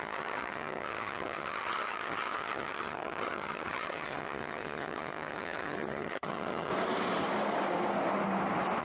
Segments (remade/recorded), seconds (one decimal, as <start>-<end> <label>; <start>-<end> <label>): 0.0-6.7 remade; 6.7-8.8 recorded